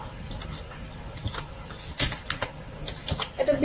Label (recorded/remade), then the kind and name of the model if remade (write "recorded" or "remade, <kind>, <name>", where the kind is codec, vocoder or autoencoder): recorded